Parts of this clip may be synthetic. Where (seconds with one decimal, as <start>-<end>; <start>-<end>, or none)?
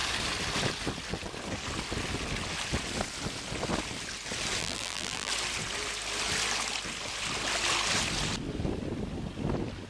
4.6-5.3